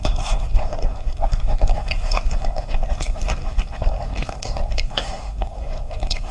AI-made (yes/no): yes